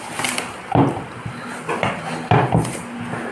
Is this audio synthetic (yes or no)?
no